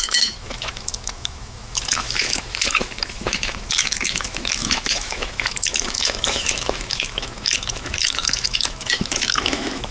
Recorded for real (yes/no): no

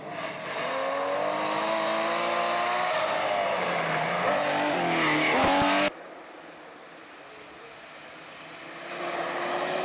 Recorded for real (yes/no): yes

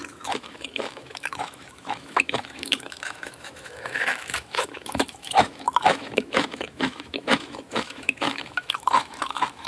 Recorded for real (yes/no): no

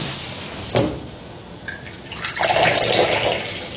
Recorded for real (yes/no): yes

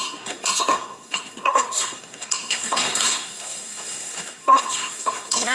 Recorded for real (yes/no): no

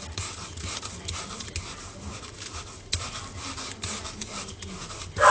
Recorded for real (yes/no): yes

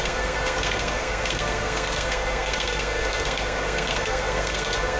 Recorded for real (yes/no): no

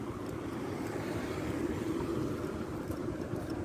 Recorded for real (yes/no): no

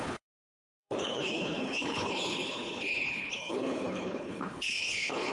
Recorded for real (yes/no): no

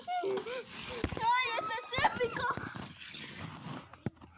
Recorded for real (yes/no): yes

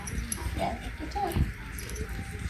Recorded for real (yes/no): no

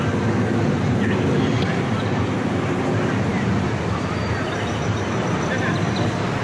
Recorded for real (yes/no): yes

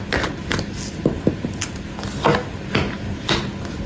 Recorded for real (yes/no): yes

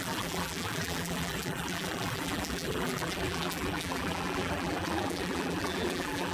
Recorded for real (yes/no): no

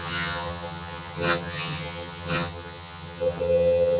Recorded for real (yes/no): no